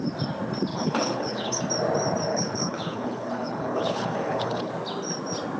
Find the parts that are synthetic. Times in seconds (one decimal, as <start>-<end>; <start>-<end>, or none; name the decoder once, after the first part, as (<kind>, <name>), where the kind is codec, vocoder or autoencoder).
0.7-1.6 (codec, HILCodec); 2.3-4.7